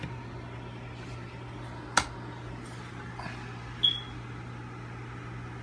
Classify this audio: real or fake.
real